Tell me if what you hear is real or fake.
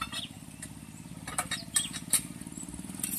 real